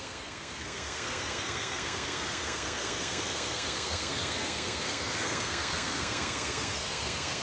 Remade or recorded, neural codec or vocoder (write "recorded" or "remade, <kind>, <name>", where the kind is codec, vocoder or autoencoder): remade, codec, SNAC